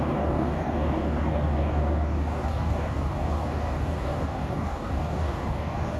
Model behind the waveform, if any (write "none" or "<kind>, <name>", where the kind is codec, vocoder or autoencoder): codec, DAC